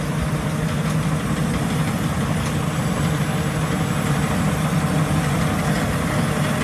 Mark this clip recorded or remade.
recorded